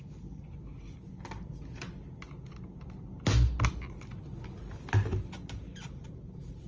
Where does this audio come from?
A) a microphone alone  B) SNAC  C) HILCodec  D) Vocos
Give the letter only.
A